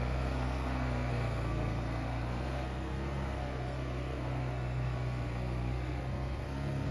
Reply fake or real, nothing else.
fake